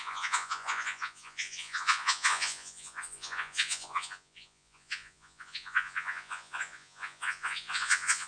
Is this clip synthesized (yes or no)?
yes